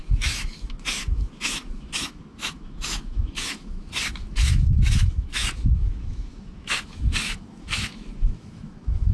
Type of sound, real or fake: fake